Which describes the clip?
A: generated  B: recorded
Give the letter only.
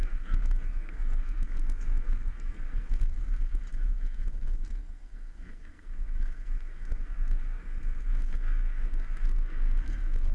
A